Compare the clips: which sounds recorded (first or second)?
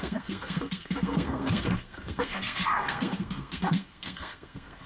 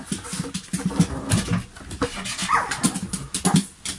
second